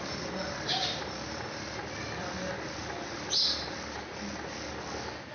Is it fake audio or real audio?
real